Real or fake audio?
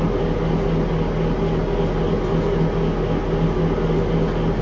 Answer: real